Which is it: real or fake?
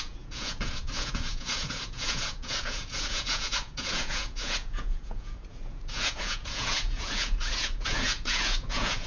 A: fake